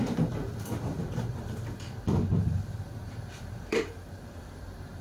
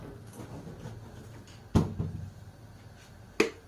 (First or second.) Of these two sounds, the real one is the second